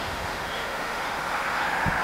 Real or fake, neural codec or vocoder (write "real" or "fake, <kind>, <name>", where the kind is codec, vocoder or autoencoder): fake, autoencoder, DAC-VAE